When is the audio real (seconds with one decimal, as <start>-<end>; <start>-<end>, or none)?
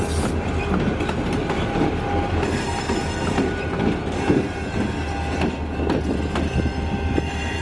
0.0-7.6